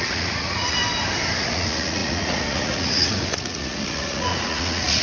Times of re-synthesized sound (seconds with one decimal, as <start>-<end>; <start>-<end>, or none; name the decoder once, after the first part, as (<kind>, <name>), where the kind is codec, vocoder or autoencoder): 0.0-0.8 (vocoder, Vocos); 1.4-5.0